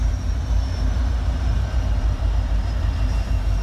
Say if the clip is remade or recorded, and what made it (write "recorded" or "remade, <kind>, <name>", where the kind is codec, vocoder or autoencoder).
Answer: remade, vocoder, BigVGAN v2